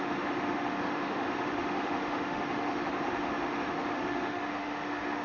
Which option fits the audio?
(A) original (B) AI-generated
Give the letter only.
B